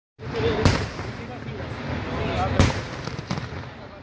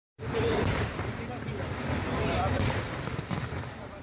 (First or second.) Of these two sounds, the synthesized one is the second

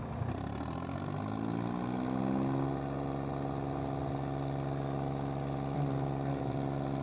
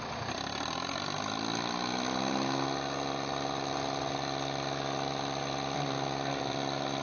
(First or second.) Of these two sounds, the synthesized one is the second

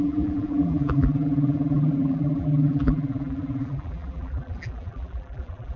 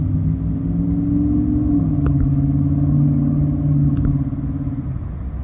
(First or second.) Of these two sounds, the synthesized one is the first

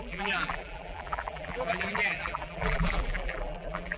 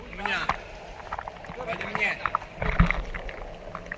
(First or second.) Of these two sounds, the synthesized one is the first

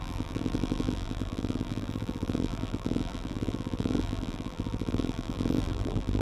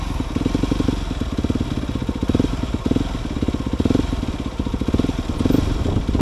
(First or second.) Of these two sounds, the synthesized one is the first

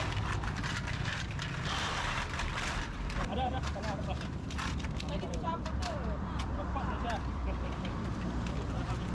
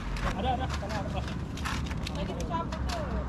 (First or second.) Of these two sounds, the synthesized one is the first